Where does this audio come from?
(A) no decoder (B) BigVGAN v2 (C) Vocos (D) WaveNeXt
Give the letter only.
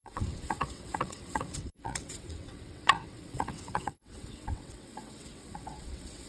D